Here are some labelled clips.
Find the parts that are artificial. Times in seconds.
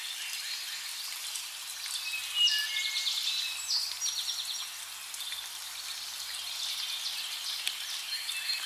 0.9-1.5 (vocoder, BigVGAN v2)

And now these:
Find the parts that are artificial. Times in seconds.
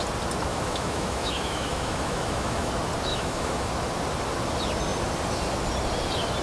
0.5-2.7 (autoencoder, DAC-VAE); 3.1-3.7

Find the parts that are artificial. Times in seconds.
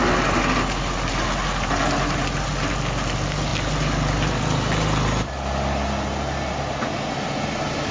none